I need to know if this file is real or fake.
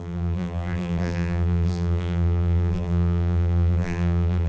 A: fake